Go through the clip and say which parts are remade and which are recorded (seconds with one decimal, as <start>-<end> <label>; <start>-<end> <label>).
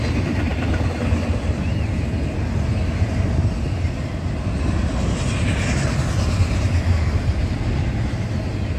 0.0-8.8 recorded